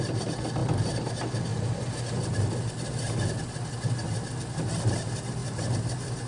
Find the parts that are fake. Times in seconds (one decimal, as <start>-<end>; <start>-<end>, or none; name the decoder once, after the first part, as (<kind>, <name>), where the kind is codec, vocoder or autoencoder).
5.4-6.3 (vocoder, BigVGAN v2)